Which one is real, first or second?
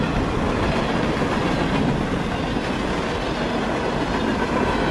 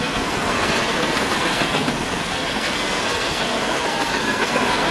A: first